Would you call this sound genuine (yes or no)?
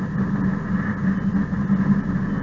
yes